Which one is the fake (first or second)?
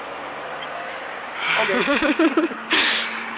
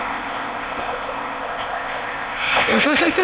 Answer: second